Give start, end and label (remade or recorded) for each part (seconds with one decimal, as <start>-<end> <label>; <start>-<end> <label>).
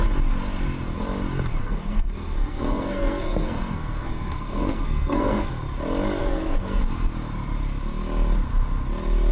0.0-1.6 recorded; 1.6-5.5 remade; 5.5-6.2 recorded; 6.2-6.8 remade; 6.8-9.3 recorded